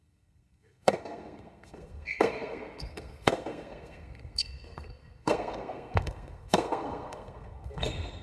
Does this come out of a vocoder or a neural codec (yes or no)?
yes